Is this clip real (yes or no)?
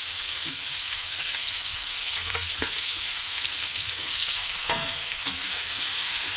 no